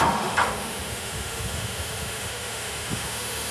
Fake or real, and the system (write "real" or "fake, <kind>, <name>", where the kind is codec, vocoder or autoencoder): fake, autoencoder, DAC-VAE